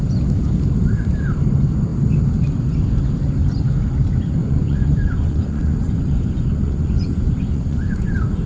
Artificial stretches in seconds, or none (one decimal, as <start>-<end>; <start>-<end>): 4.4-8.1